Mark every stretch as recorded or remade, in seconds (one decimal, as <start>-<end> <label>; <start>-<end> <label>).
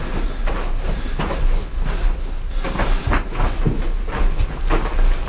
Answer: 0.0-5.3 recorded